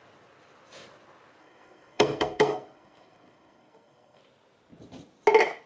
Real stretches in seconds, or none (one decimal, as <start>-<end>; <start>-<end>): 0.0-1.4; 4.2-5.7